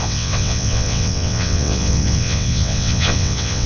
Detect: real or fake fake